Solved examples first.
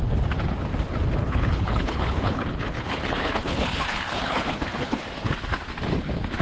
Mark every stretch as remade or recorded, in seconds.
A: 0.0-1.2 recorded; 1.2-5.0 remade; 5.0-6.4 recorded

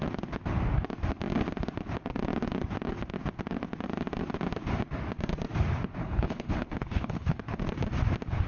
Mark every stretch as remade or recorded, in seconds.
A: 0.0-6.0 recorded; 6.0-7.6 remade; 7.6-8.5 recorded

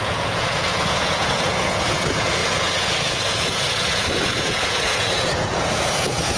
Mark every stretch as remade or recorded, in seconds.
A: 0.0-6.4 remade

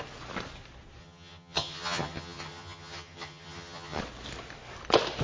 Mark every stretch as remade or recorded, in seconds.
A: 0.0-1.0 recorded; 1.0-4.0 remade; 4.0-5.2 recorded

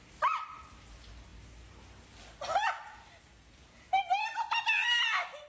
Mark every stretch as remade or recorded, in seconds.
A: 0.0-5.5 recorded

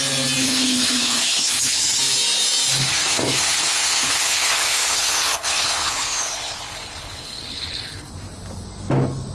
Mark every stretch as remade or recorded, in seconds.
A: 0.0-0.4 recorded; 0.4-2.0 remade; 2.0-2.9 recorded; 2.9-8.1 remade; 8.1-9.3 recorded

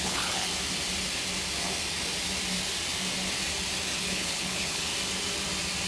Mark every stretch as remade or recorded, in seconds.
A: 0.0-0.5 remade; 0.5-4.0 recorded; 4.0-4.9 remade; 4.9-5.9 recorded